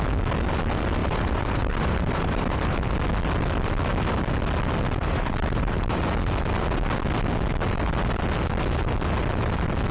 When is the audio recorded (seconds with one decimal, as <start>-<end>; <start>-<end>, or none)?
0.0-1.0; 2.9-5.0; 6.0-9.9